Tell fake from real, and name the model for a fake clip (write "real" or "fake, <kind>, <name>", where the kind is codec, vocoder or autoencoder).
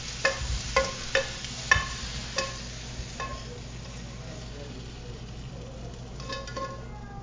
real